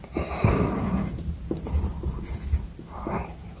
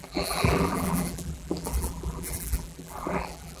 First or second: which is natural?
first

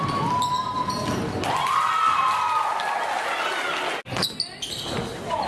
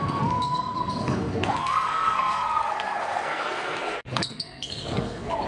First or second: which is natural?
first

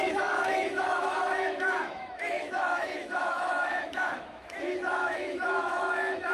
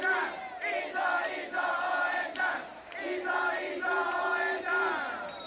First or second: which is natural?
second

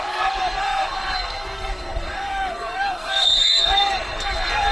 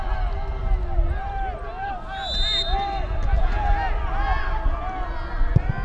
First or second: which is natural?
second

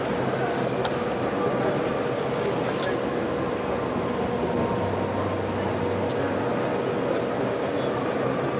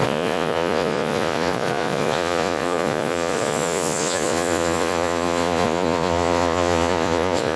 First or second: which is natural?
first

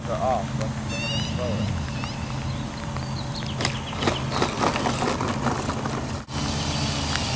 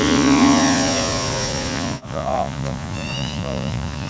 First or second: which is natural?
first